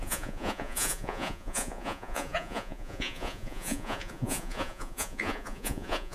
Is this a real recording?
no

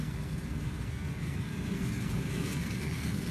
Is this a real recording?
no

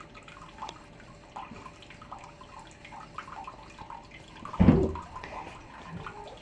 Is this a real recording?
yes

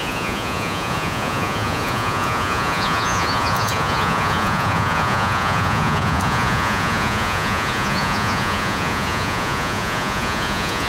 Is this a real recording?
no